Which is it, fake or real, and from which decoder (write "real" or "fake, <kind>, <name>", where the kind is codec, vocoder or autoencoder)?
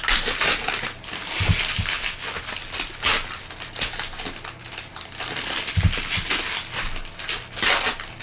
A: real